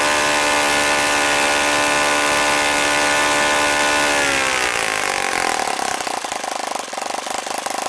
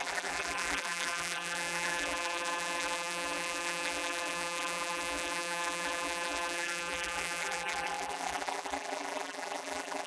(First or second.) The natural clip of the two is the first